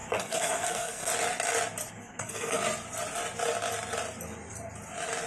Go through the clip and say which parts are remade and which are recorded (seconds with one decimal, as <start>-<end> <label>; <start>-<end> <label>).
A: 0.0-1.1 remade; 1.1-1.9 recorded; 1.9-2.6 remade; 2.6-5.3 recorded